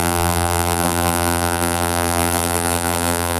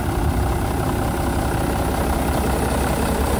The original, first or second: second